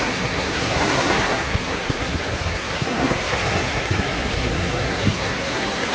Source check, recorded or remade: remade